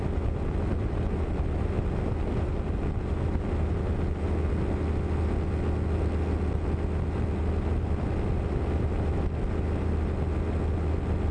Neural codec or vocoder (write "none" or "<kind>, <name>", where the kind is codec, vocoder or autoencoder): none